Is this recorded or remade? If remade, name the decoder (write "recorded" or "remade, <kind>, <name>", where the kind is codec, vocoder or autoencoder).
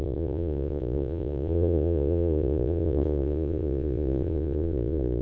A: remade, vocoder, Vocos